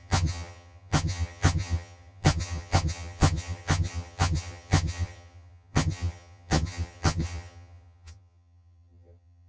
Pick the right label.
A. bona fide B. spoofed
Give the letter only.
B